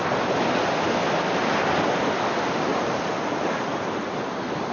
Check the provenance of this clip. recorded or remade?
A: recorded